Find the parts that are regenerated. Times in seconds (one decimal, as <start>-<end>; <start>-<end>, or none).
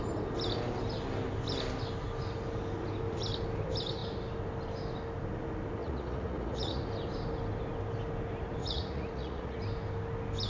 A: 5.8-6.8; 8.6-9.6